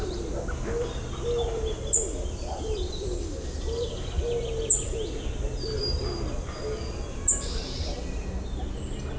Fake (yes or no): no